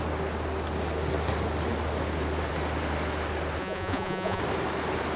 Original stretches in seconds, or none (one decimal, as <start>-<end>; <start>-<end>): 0.0-3.6; 4.4-5.2